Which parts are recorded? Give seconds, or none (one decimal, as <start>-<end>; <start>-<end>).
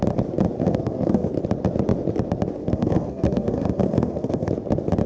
0.0-0.6; 1.3-2.6; 4.5-5.1